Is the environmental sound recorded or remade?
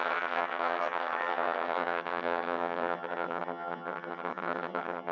remade